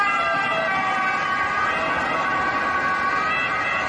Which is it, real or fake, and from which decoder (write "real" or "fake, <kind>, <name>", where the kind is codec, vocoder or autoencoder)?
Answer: real